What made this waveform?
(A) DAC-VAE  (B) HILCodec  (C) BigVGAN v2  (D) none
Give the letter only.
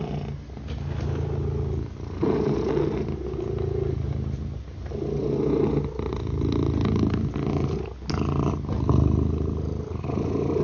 D